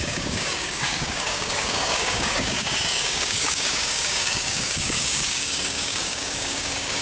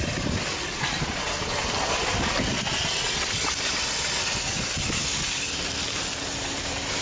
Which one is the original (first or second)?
second